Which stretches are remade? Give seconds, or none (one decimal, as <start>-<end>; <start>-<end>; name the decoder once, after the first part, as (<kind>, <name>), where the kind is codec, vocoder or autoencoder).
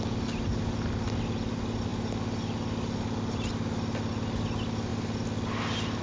none